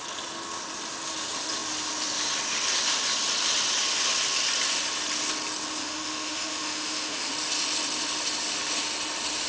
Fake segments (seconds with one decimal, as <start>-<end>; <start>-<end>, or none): 5.8-7.3